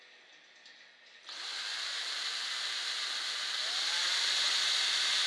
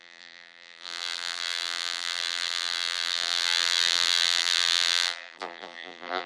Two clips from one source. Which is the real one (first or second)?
first